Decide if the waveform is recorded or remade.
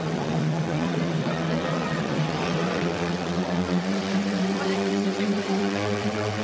remade